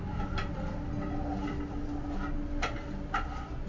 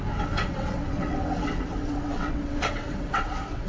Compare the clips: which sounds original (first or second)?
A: first